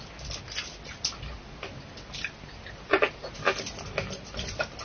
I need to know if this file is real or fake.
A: real